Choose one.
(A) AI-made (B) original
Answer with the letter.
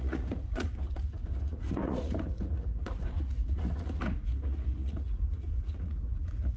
A